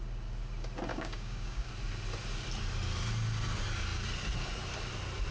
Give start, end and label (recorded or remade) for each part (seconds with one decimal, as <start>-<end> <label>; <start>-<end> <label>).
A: 0.0-0.9 recorded; 0.9-1.7 remade; 1.7-5.3 recorded